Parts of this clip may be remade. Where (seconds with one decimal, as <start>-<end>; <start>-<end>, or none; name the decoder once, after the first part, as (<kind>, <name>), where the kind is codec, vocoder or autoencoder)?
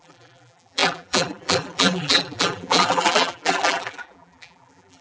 0.0-5.0 (vocoder, BigVGAN v2)